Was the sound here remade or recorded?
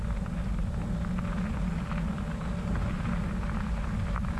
recorded